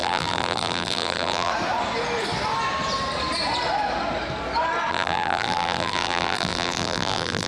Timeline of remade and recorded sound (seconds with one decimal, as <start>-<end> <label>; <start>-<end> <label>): 0.0-1.5 remade; 1.5-4.9 recorded; 4.9-7.5 remade